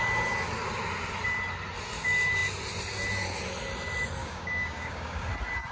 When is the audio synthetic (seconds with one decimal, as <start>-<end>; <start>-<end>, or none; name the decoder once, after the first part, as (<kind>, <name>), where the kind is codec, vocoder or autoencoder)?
4.2-5.3 (codec, DAC)